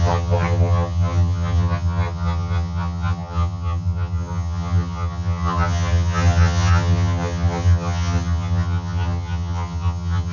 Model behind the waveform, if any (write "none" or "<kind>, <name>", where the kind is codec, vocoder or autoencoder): vocoder, HiFi-GAN